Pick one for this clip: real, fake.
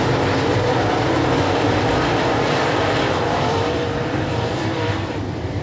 fake